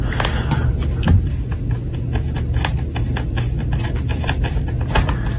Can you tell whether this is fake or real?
real